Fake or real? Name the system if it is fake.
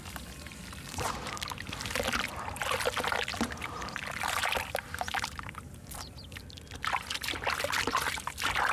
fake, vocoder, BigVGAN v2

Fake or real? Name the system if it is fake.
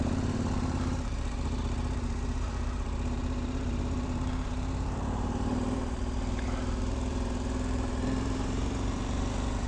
fake, vocoder, BigVGAN v2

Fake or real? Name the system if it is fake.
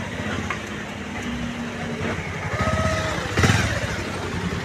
real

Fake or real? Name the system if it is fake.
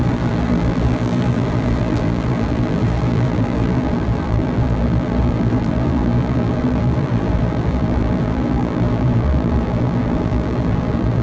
fake, vocoder, BigVGAN v2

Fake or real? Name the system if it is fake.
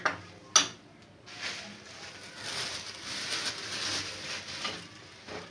real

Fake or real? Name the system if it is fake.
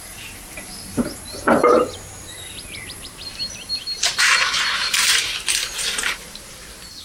fake, vocoder, BigVGAN v2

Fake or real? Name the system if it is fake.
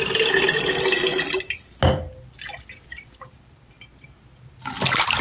real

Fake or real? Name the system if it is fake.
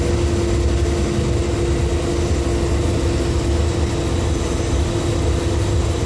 real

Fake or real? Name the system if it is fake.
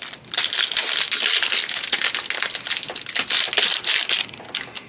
real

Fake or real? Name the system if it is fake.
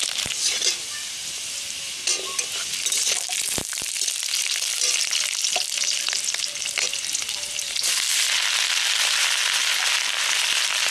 real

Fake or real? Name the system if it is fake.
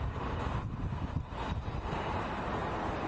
real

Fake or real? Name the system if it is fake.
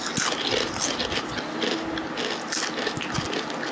real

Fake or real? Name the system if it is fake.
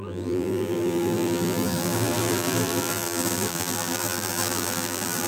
fake, vocoder, BigVGAN v2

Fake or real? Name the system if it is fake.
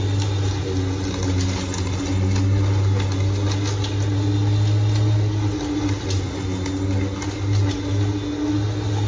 real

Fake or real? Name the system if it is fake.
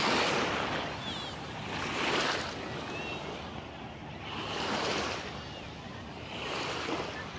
real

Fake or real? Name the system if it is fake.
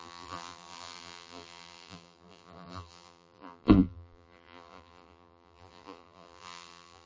fake, vocoder, BigVGAN v2